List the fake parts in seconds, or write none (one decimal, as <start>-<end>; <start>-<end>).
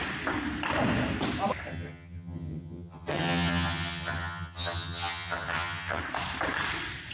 1.7-6.0